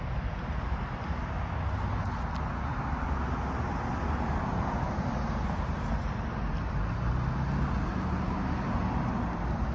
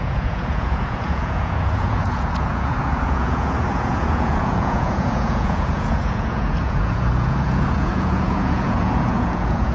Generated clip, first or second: second